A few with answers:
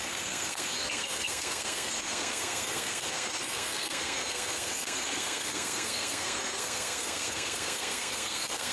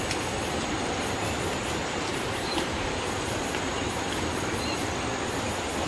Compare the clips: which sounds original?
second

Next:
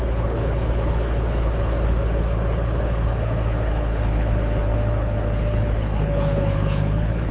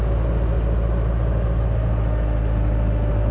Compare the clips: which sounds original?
second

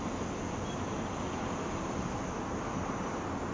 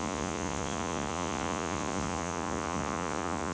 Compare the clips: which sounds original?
first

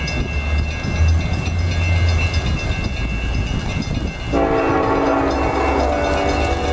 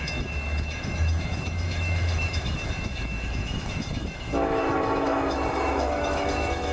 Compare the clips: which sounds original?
first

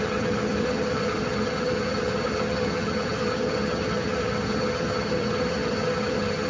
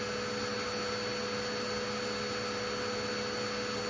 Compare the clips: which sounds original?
second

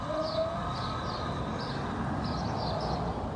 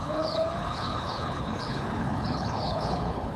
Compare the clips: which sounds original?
first